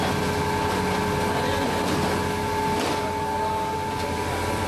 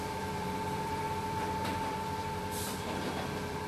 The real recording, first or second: first